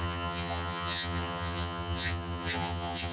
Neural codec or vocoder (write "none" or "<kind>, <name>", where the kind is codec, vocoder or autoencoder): vocoder, HiFi-GAN